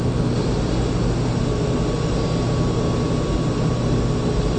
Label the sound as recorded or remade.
recorded